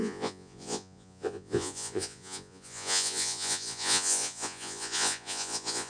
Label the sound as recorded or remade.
remade